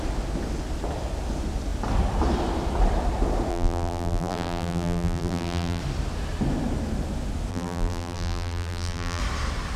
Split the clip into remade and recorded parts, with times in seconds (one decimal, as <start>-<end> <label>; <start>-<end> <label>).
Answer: 0.0-3.5 recorded; 3.5-5.8 remade; 5.8-7.5 recorded; 7.5-9.2 remade; 9.2-9.8 recorded